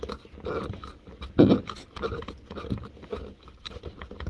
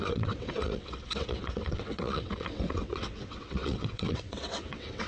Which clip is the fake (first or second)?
second